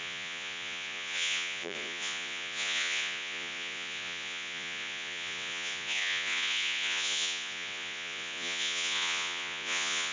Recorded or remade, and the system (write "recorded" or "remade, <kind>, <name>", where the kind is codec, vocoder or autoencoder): remade, vocoder, Vocos